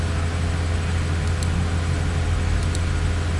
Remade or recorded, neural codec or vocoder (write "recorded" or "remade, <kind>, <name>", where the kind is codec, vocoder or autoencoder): recorded